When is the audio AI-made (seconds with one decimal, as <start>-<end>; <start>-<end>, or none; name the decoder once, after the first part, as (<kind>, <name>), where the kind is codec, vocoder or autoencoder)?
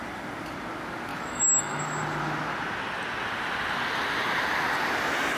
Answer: 1.1-1.8 (autoencoder, DAC-VAE)